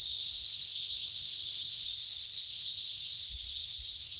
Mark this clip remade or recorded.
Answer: remade